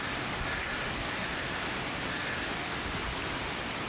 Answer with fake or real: real